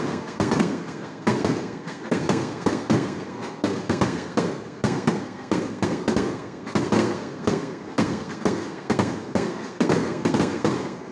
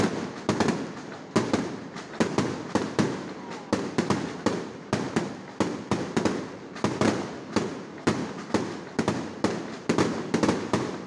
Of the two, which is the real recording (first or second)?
second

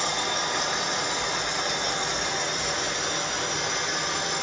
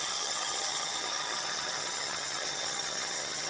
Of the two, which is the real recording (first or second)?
first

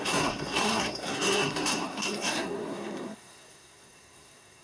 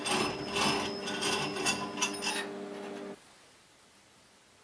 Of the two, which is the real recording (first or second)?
second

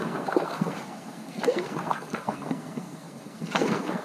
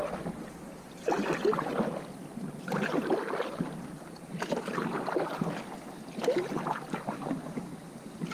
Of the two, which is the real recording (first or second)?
second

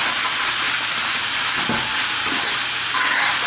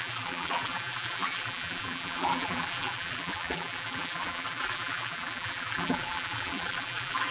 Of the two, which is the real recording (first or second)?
first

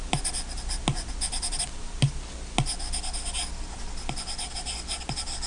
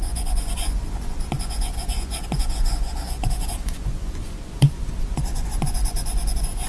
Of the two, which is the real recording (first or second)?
first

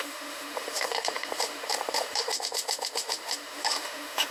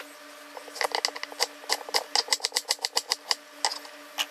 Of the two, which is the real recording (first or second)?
second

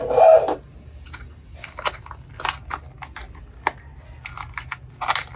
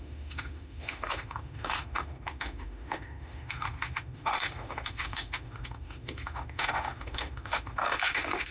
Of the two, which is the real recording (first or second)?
first